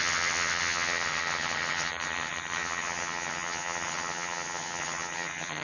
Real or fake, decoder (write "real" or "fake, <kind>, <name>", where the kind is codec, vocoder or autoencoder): fake, vocoder, HiFi-GAN